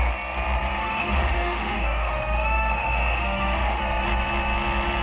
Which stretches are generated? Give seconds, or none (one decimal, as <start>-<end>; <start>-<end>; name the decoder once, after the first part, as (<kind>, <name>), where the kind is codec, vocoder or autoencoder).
0.8-3.8 (autoencoder, DAC-VAE)

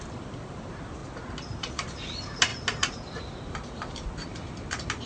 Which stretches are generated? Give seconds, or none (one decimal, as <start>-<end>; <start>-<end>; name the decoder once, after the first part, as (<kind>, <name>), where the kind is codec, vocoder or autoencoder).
0.0-1.0 (vocoder, BigVGAN v2); 1.6-2.5; 3.5-4.3